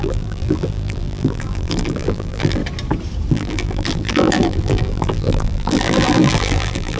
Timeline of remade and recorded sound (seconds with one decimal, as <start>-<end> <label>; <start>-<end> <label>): 0.0-2.6 remade; 2.6-3.3 recorded; 3.3-7.0 remade

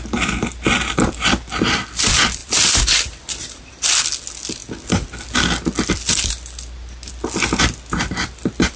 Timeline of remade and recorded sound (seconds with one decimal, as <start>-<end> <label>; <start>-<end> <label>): 0.0-2.4 recorded; 2.4-3.7 remade; 3.7-8.8 recorded

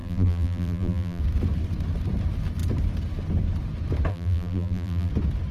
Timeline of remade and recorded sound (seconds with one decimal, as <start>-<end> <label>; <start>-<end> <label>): 0.0-1.2 remade; 1.2-4.1 recorded; 4.1-5.1 remade; 5.1-5.5 recorded

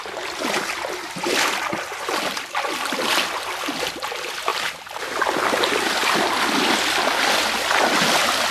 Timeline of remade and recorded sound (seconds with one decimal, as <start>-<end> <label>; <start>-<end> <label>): 0.0-4.5 recorded; 4.5-5.1 remade; 5.1-6.0 recorded; 6.0-6.6 remade; 6.6-8.5 recorded

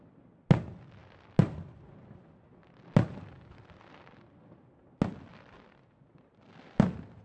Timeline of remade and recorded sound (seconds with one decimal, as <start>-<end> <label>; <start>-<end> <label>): 0.0-7.2 recorded